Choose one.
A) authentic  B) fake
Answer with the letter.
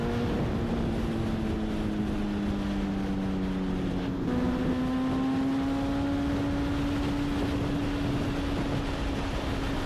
A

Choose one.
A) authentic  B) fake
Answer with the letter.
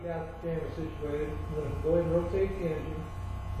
A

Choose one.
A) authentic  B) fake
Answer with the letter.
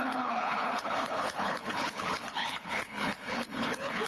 B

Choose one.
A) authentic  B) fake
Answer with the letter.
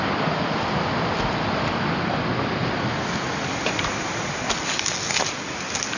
A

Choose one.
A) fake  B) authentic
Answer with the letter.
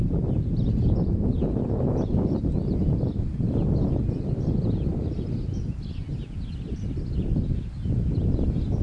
B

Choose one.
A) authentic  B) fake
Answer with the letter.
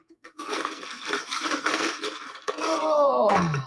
B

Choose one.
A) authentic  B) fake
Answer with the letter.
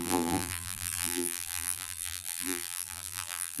B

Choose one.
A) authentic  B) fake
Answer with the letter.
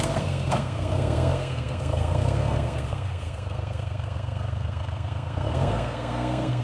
B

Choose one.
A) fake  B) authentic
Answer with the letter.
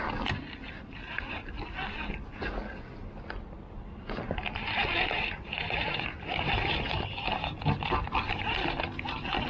B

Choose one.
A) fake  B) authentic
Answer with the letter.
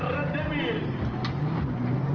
B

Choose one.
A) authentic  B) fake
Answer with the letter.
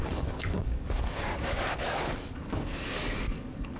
B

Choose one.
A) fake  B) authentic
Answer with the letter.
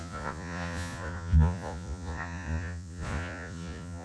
A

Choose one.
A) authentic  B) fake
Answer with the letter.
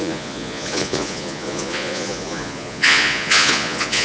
B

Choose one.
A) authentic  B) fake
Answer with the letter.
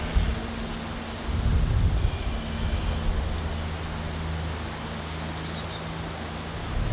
A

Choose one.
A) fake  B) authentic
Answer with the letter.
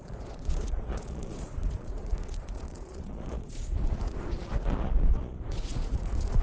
A